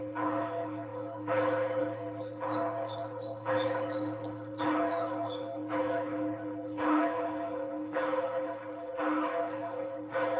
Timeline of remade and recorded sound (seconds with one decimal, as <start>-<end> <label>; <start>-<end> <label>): 0.0-10.4 remade